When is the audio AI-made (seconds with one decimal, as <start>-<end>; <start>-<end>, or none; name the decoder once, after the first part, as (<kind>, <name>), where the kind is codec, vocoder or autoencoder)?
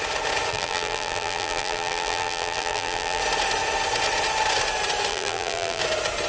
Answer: 0.5-3.2 (vocoder, BigVGAN v2); 5.1-5.8